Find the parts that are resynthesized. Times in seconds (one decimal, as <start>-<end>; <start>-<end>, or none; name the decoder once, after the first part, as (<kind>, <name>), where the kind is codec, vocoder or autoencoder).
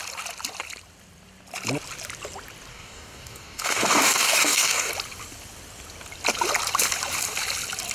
2.7-4.9 (codec, DAC)